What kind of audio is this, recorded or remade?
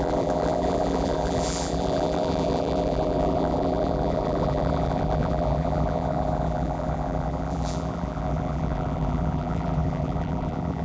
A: remade